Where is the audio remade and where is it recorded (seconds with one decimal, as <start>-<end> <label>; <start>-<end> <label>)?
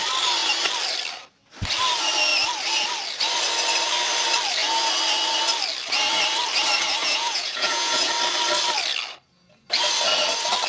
0.0-7.0 recorded; 7.0-8.1 remade; 8.1-10.7 recorded